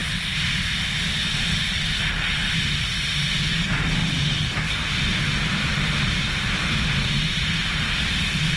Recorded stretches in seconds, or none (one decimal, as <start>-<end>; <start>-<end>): 0.0-8.6